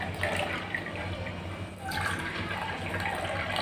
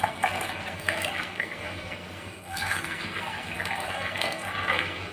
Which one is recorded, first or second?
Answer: first